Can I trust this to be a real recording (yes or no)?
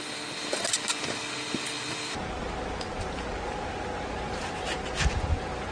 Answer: yes